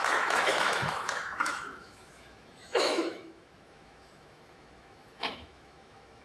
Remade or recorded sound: remade